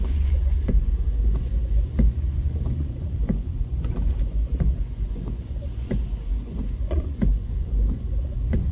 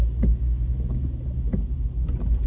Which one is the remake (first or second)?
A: first